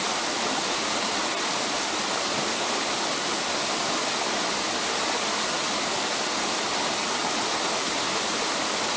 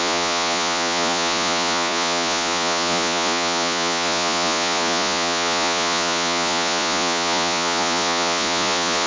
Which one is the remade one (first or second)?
second